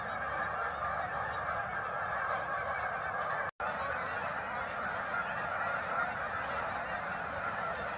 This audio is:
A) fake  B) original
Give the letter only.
B